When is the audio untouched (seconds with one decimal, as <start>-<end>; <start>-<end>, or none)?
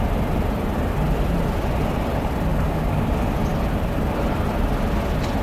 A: 0.0-2.5; 3.1-5.4